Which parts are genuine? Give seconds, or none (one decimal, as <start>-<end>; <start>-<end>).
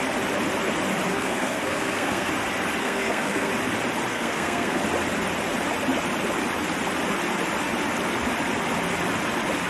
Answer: 0.0-1.1; 2.3-2.8; 3.5-4.1; 4.8-9.7